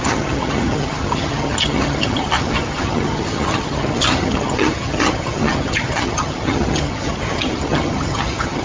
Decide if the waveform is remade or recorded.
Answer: remade